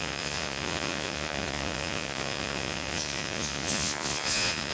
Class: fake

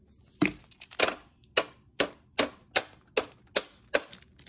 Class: real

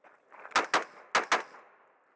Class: real